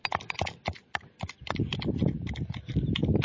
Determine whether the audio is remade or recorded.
recorded